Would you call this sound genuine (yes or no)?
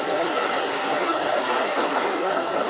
no